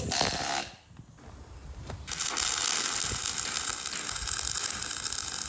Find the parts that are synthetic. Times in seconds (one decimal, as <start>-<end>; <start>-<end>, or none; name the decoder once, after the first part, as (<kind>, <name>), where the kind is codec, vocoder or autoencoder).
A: none